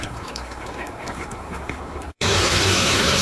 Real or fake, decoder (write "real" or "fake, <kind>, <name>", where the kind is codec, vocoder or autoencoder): fake, codec, SNAC